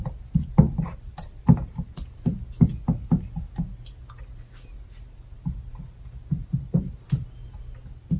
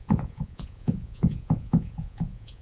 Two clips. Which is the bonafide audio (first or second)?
first